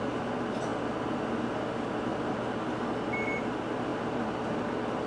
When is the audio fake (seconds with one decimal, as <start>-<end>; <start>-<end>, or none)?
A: none